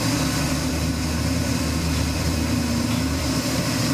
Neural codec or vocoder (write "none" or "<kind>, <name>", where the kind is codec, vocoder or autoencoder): vocoder, BigVGAN v2